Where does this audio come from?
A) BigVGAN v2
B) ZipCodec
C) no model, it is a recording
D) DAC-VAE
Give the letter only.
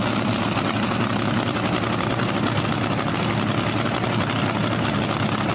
C